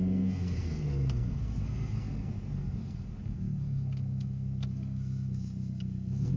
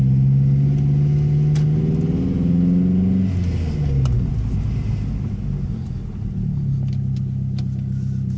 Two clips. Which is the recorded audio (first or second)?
second